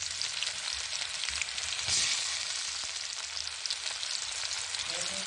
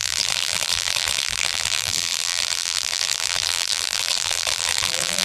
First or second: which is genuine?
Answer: first